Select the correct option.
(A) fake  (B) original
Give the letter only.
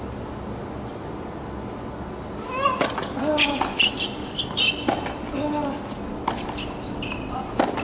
B